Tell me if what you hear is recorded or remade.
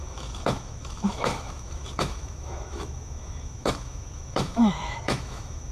remade